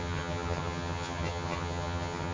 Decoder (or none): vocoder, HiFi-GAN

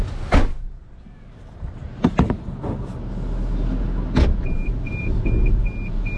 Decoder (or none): none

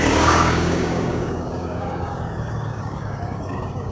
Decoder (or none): codec, DAC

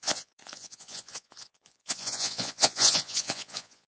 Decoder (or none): vocoder, Vocos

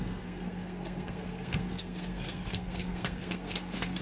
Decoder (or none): codec, SNAC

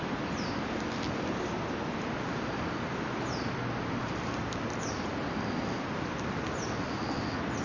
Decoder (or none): none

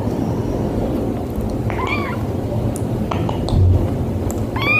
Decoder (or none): none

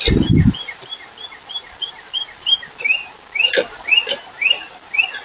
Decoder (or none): vocoder, BigVGAN v2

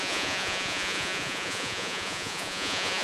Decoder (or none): vocoder, Vocos